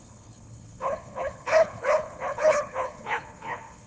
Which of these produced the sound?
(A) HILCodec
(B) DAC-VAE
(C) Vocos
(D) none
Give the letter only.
A